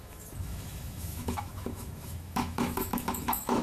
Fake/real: fake